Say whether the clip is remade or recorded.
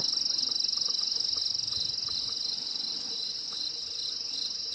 recorded